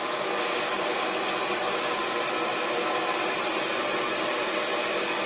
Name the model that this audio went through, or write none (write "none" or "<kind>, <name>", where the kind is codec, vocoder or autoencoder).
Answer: none